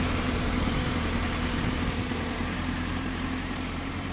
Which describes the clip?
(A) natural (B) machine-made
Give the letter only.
B